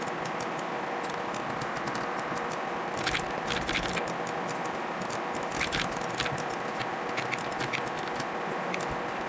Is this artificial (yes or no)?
no